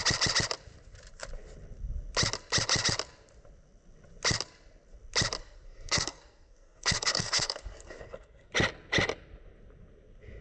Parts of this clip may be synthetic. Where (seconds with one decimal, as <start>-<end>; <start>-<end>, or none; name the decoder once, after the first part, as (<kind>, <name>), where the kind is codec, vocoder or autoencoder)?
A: 5.4-8.5 (codec, SNAC)